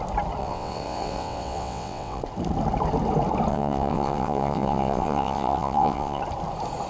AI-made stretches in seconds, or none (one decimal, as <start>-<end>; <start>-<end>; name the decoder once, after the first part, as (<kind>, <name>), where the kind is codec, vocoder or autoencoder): 0.4-2.2 (vocoder, WaveNeXt); 3.5-6.2